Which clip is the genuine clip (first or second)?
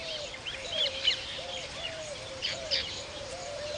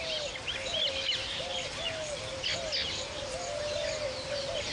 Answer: second